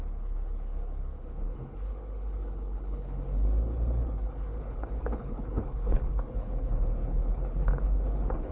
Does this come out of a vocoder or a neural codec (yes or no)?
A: yes